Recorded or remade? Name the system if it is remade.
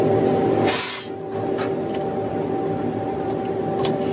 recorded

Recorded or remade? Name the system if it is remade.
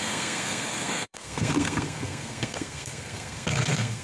remade, codec, SNAC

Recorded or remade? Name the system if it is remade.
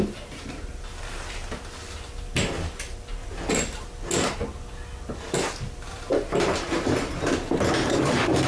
recorded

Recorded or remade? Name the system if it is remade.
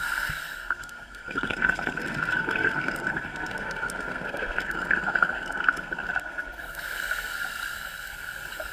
remade, codec, SNAC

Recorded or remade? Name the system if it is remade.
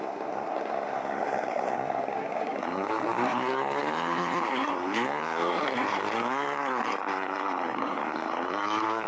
remade, codec, SNAC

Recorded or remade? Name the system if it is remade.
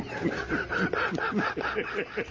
recorded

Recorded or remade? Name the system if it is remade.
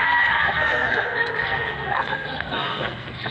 remade, codec, SNAC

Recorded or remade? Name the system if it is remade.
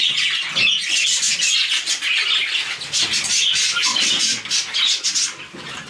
recorded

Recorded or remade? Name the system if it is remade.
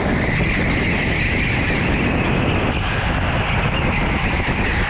recorded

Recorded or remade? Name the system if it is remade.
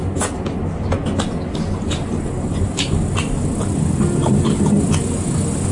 recorded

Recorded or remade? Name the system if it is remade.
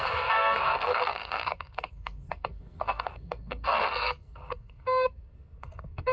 remade, codec, SNAC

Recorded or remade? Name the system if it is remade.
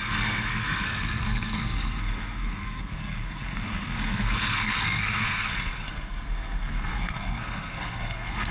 remade, codec, SNAC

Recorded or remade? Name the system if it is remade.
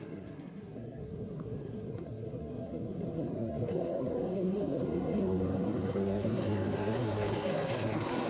remade, codec, SNAC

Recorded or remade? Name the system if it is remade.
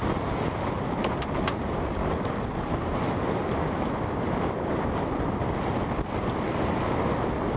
recorded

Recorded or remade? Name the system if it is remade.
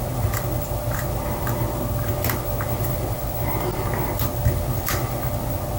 recorded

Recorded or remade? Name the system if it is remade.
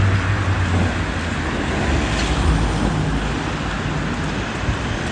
recorded